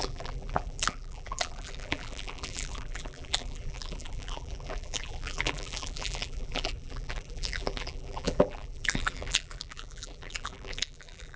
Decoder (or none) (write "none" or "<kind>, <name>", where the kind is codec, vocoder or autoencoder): vocoder, BigVGAN v2